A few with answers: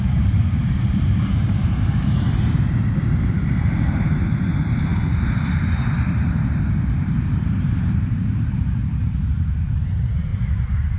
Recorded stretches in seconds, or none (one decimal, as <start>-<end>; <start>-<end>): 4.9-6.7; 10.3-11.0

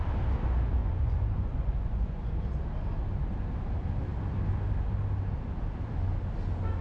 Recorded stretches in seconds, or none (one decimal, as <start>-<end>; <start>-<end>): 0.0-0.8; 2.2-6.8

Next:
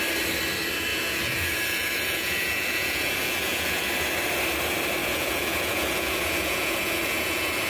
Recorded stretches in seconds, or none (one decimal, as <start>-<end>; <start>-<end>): 0.0-0.9; 3.8-5.0

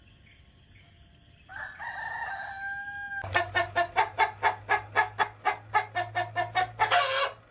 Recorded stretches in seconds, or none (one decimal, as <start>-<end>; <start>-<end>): 0.0-7.5

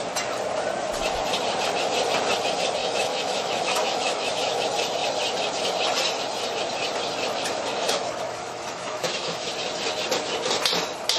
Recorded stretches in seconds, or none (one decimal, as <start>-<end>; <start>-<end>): 0.0-2.8; 4.6-7.7; 9.5-11.2

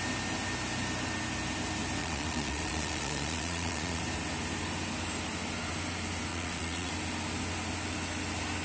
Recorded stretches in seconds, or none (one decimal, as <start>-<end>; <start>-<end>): 0.0-2.0; 4.0-6.3; 6.9-8.6

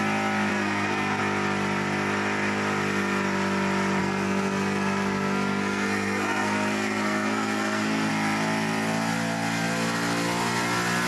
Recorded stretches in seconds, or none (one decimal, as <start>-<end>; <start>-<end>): 0.0-0.5; 1.2-4.0; 8.1-11.1

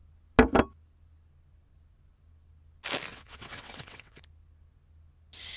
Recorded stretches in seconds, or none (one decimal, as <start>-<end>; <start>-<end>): 0.0-3.1; 4.2-5.6